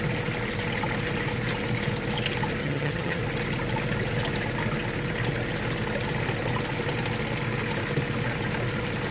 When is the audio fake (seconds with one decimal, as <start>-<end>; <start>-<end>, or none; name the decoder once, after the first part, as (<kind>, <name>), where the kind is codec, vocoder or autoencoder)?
2.6-3.2 (vocoder, HiFi-GAN)